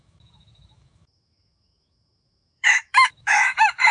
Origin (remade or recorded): remade